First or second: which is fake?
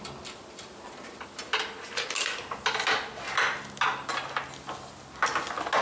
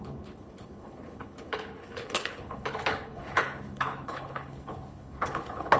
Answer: second